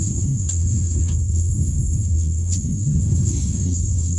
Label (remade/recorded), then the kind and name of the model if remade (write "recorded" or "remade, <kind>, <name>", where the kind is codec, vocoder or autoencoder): remade, codec, SNAC